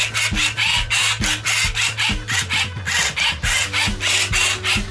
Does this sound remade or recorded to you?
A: recorded